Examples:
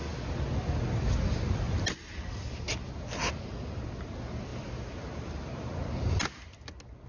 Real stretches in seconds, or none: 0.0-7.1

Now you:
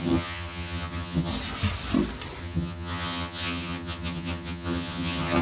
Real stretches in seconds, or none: 1.3-2.4

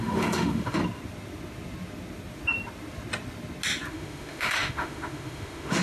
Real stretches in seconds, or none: 0.8-3.9